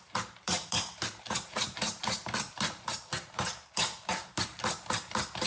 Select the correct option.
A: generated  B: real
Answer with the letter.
A